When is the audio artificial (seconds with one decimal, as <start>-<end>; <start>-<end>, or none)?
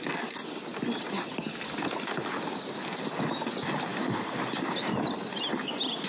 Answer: none